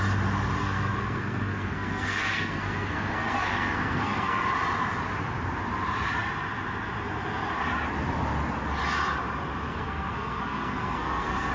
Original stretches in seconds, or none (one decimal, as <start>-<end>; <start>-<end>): 0.0-0.6; 4.5-9.7